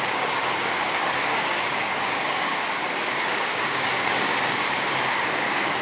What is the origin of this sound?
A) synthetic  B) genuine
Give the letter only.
A